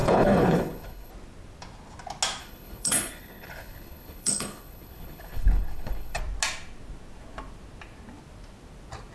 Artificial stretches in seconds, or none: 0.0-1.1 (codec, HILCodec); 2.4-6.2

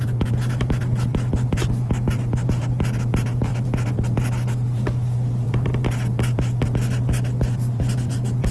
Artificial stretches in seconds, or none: none

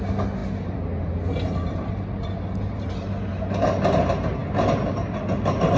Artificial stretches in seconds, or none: none

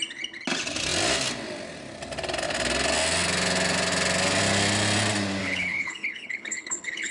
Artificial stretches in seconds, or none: 5.4-7.1 (codec, HILCodec)

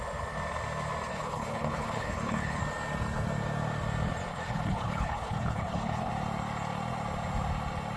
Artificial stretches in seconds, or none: 1.1-2.6 (codec, HILCodec); 4.3-6.1

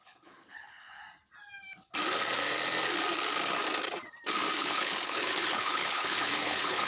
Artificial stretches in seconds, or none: 0.0-1.0 (codec, HILCodec); 4.6-6.9

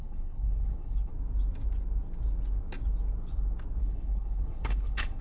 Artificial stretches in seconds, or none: 0.0-1.1 (codec, HILCodec); 3.8-5.2

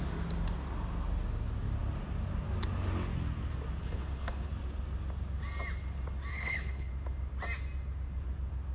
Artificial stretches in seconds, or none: 3.8-4.5 (codec, HILCodec); 6.3-6.9